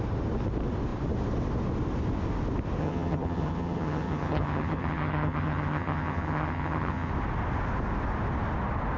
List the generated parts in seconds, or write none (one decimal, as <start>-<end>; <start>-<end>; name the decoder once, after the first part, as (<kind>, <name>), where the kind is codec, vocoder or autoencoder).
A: 2.8-7.1 (vocoder, HiFi-GAN)